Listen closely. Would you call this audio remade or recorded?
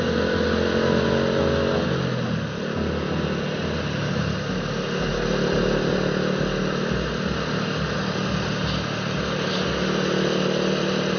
recorded